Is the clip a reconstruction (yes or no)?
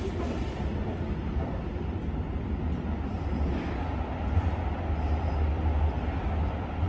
no